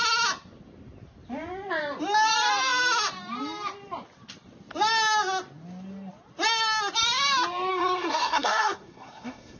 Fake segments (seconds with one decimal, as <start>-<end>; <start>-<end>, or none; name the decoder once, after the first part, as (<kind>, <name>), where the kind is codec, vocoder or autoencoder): 7.7-9.6 (codec, SNAC)

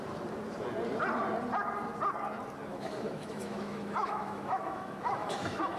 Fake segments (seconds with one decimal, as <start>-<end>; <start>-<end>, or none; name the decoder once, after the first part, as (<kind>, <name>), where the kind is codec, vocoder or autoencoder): 2.7-5.8 (autoencoder, DAC-VAE)

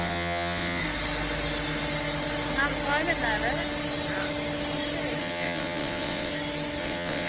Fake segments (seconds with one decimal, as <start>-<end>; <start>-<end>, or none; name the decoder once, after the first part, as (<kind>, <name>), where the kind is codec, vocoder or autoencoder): 0.0-0.8 (vocoder, WaveNeXt); 5.2-6.3; 6.8-7.3

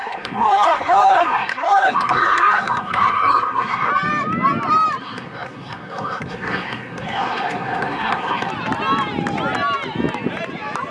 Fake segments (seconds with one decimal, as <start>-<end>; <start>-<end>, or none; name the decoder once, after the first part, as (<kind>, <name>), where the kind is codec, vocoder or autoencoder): 0.0-3.9 (codec, SNAC); 5.0-8.5

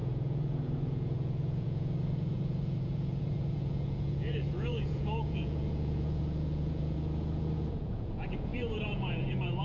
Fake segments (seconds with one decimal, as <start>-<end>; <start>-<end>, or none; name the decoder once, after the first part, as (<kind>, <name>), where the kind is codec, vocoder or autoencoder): 0.0-9.6 (vocoder, Vocos)

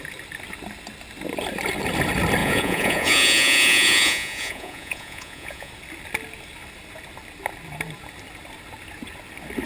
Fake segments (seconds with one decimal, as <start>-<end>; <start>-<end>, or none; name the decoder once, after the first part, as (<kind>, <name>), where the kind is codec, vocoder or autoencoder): 2.4-5.7 (vocoder, Vocos)